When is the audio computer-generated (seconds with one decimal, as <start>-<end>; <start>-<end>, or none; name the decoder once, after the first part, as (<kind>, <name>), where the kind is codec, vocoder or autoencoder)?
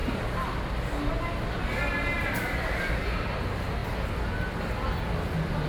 none